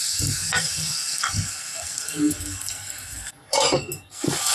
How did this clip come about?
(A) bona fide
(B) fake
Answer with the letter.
B